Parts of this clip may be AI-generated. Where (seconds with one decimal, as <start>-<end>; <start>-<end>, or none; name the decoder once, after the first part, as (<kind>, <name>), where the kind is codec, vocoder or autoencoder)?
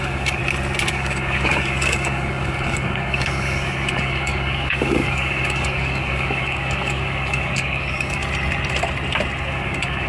0.0-0.4 (codec, DAC); 0.9-8.2; 9.4-10.1